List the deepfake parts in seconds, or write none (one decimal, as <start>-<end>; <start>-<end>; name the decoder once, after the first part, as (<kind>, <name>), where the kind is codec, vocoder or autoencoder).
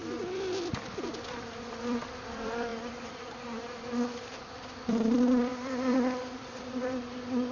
0.0-2.7 (vocoder, BigVGAN v2); 4.4-7.5